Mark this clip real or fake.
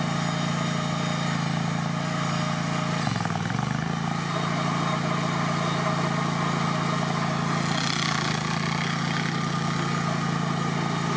real